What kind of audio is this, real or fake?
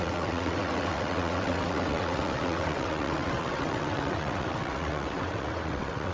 fake